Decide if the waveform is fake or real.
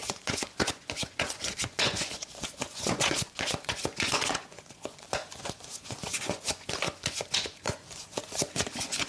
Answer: fake